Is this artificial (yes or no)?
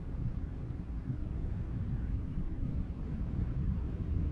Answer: yes